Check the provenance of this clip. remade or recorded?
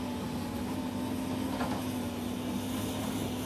recorded